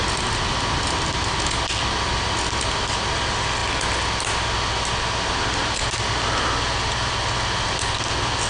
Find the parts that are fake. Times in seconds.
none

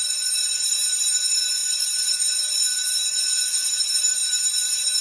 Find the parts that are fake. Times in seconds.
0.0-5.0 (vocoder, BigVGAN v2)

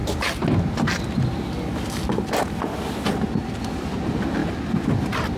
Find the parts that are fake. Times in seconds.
none

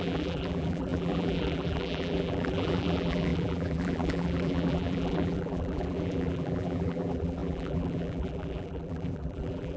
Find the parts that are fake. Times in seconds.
0.0-9.8 (vocoder, BigVGAN v2)

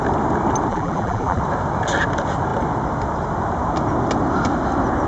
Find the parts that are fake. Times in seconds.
0.7-1.4 (vocoder, BigVGAN v2)

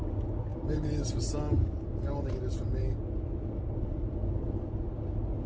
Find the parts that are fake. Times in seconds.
0.5-1.4 (vocoder, BigVGAN v2)

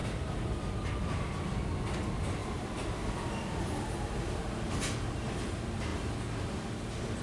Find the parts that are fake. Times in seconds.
2.4-4.4 (vocoder, BigVGAN v2)

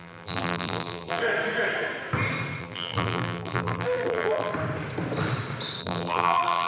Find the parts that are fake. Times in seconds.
0.0-1.2 (vocoder, BigVGAN v2); 2.6-4.5; 5.8-6.7